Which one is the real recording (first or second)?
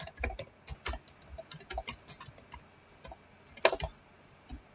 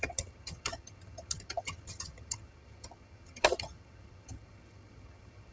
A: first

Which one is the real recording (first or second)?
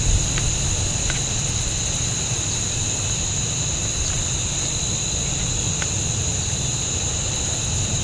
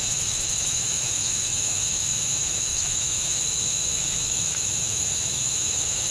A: first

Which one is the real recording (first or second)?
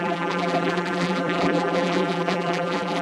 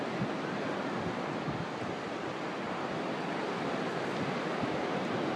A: second